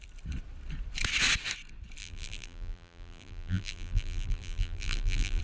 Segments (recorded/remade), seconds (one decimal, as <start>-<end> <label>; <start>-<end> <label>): 0.0-2.0 recorded; 2.0-5.4 remade